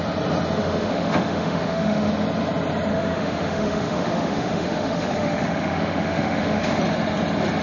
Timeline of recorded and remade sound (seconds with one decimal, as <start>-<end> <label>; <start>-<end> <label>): 0.0-0.6 recorded; 0.6-2.1 remade; 2.1-2.9 recorded; 2.9-6.8 remade; 6.8-7.6 recorded